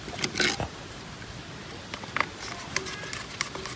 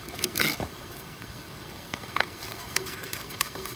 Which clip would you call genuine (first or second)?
first